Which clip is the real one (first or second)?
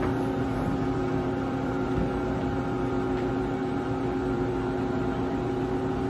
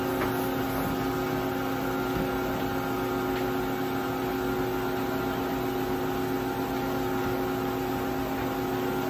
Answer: second